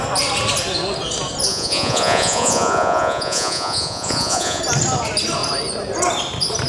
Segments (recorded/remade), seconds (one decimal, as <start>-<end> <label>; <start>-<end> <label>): 0.0-1.5 recorded; 1.5-4.6 remade; 4.6-6.7 recorded